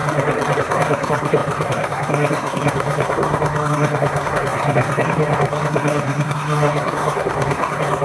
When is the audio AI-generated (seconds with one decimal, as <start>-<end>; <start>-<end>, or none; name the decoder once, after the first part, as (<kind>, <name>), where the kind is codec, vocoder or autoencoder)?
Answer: 0.6-8.0 (codec, SNAC)